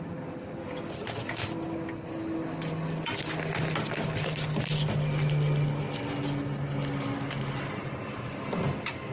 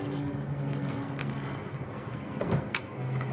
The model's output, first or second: second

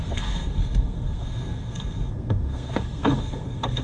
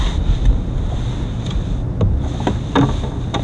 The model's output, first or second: first